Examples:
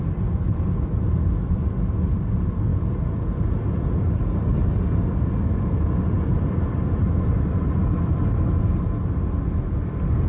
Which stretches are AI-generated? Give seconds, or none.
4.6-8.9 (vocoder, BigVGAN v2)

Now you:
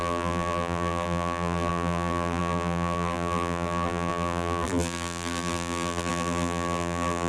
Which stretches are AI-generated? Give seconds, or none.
0.0-7.3 (vocoder, BigVGAN v2)

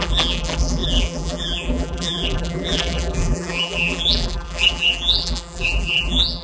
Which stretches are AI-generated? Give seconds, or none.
0.0-6.4 (vocoder, BigVGAN v2)